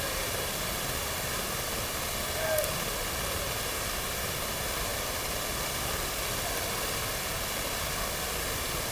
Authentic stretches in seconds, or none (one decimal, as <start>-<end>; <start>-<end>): 0.0-8.9